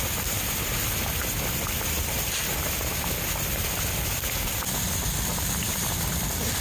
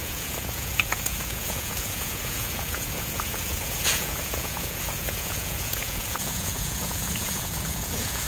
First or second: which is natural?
first